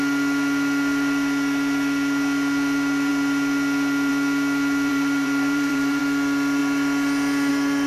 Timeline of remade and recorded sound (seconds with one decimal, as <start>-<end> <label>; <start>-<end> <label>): 0.0-4.9 recorded; 4.9-6.0 remade; 6.0-7.9 recorded

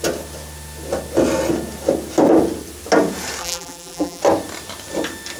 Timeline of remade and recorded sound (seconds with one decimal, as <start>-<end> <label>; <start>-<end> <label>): 0.0-3.4 recorded; 3.4-4.2 remade; 4.2-5.4 recorded

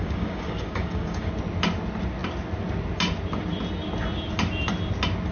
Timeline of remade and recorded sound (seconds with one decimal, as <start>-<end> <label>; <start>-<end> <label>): 0.0-1.3 remade; 1.3-5.3 recorded

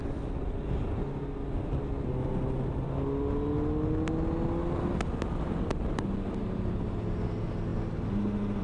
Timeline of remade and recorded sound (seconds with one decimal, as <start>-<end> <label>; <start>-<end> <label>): 0.0-8.6 recorded

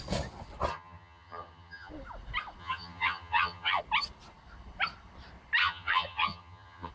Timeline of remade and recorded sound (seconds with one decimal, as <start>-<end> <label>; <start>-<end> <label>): 0.0-0.7 recorded; 0.7-1.9 remade; 1.9-2.6 recorded; 2.6-3.8 remade; 3.8-5.6 recorded; 5.6-6.9 remade

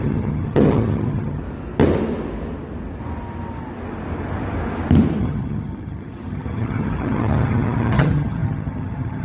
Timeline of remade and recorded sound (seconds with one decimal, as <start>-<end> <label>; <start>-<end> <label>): 0.0-1.4 remade; 1.4-5.2 recorded; 5.2-9.2 remade

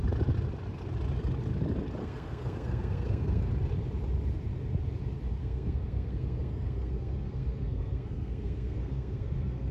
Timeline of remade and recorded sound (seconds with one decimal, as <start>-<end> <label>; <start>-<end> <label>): 0.0-2.0 recorded; 2.0-3.5 remade; 3.5-5.4 recorded; 5.4-9.7 remade